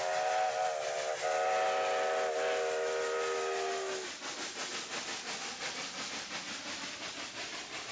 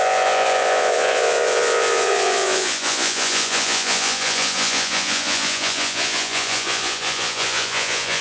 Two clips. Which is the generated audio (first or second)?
second